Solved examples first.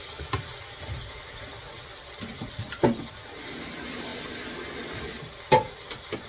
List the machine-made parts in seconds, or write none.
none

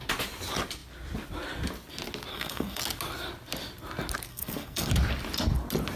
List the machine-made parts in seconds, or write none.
2.3-2.8 (codec, SNAC); 4.3-4.9